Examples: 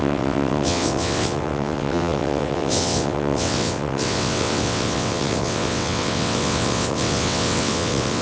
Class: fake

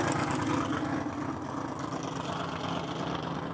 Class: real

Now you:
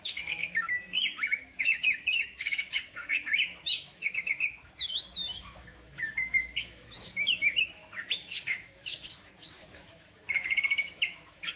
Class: fake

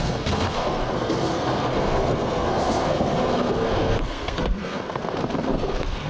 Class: fake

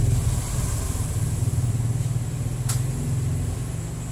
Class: real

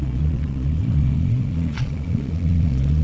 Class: fake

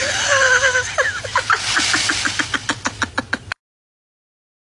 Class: real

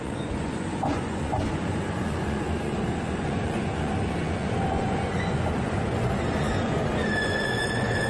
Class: fake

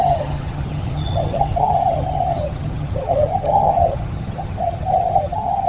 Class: fake